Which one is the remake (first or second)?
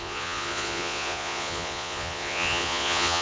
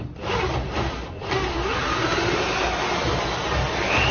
first